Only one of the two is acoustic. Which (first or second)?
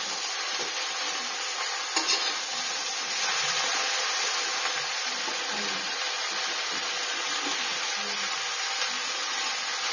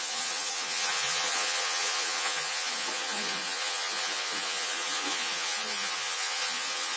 first